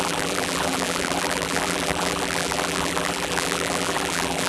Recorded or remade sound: remade